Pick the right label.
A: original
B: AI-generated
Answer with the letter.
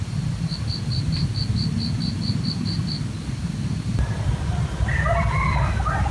A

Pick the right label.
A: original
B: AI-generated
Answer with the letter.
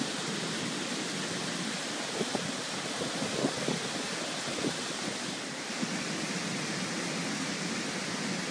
A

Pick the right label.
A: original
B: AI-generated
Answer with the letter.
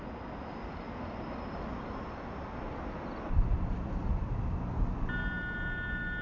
A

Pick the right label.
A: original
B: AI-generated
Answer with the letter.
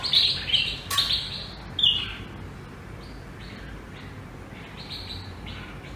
A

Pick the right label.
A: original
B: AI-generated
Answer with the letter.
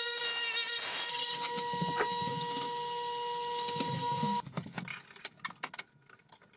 A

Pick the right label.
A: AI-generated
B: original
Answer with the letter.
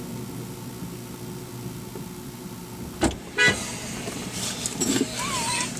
B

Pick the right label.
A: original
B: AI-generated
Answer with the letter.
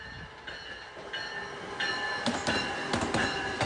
A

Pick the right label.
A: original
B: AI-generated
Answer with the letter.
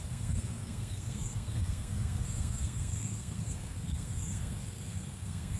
B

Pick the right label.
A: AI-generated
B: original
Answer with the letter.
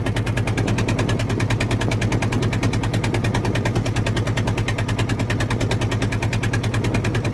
B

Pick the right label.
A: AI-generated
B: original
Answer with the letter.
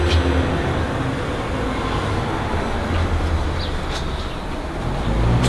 B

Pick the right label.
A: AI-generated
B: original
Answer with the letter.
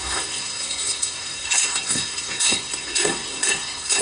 A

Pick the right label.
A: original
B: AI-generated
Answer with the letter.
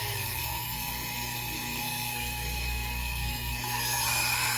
B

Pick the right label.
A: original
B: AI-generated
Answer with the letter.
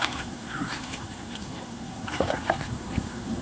B